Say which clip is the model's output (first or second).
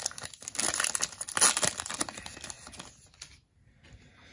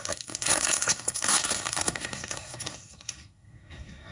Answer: second